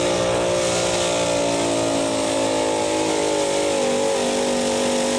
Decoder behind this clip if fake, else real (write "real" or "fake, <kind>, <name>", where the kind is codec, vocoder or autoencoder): real